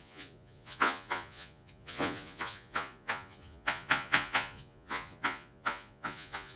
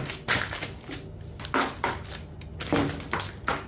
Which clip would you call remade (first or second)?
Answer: first